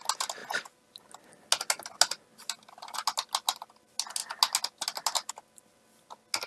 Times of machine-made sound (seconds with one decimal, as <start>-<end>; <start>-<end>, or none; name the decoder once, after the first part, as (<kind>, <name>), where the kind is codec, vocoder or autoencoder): none